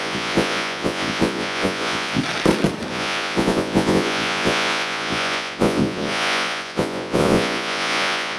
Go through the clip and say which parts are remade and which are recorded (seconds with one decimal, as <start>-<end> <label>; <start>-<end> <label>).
0.0-2.2 remade; 2.2-2.9 recorded; 2.9-8.4 remade